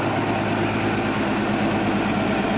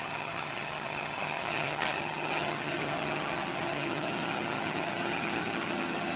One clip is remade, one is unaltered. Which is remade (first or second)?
second